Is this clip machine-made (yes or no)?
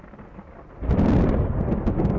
no